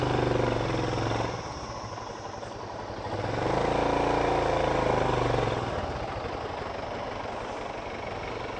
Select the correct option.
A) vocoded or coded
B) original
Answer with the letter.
B